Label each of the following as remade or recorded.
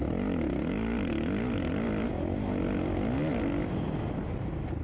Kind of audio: recorded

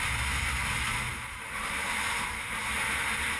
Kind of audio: recorded